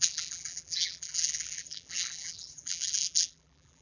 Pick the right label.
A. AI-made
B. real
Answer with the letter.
A